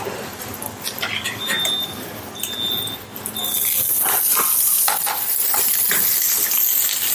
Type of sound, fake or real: real